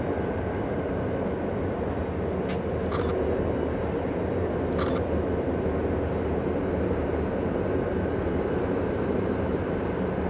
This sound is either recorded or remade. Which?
recorded